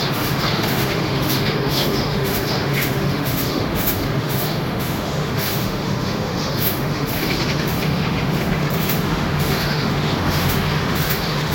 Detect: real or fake fake